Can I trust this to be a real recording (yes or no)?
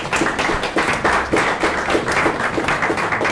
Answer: yes